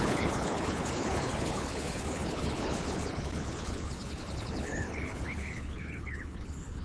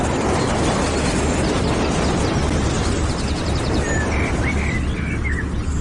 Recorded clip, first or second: second